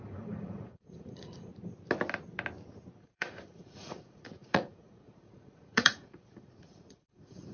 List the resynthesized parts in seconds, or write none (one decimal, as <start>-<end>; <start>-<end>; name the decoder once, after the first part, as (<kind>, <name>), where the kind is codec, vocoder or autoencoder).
0.0-1.5 (vocoder, Vocos); 3.0-7.5